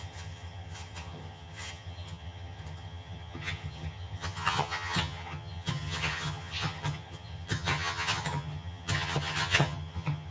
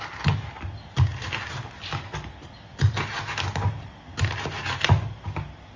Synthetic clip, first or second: first